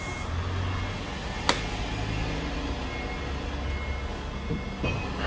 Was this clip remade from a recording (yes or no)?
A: no